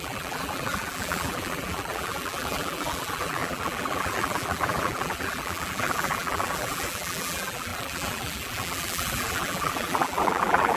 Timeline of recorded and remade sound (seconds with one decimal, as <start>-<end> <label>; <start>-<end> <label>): 0.0-10.8 remade